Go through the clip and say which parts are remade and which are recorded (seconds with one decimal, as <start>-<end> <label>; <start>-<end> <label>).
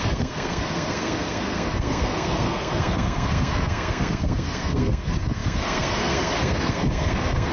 0.0-7.5 remade